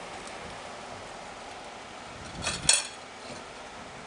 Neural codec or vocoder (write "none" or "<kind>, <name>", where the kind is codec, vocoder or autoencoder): none